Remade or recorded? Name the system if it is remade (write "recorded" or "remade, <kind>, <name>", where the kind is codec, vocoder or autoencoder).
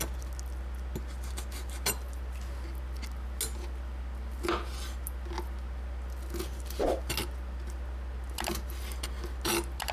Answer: recorded